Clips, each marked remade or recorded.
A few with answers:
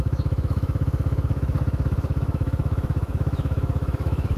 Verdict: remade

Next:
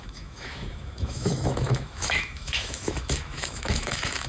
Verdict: remade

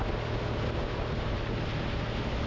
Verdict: recorded